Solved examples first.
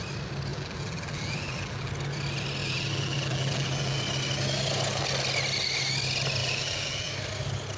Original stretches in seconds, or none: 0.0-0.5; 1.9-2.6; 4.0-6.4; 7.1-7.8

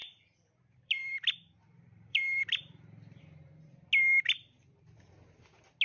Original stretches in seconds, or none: 3.2-5.8